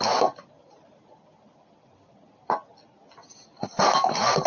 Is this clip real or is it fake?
real